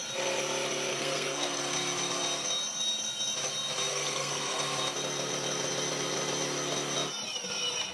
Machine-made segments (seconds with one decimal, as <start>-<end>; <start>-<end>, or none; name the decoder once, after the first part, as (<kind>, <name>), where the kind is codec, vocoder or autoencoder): 0.9-1.6 (codec, SNAC); 3.9-4.6